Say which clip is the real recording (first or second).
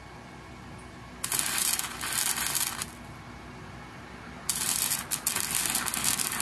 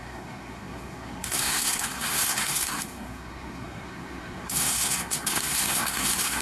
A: first